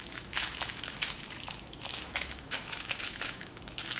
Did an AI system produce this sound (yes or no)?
yes